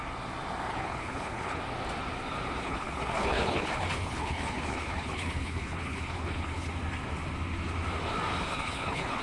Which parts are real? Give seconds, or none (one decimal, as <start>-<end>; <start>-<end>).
0.0-0.7; 1.6-2.6; 6.7-8.5

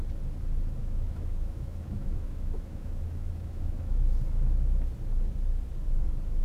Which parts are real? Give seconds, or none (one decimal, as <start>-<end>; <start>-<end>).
0.0-0.8; 4.0-6.4

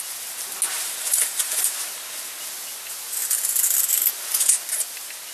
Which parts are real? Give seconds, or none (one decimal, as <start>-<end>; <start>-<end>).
0.0-0.8; 1.7-5.3

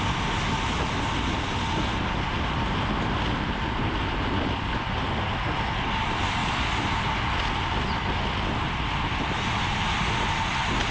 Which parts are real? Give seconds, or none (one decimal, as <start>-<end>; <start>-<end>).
0.0-10.9

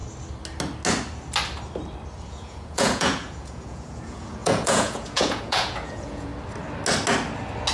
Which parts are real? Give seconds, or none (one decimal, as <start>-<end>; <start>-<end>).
0.0-2.3; 6.3-7.7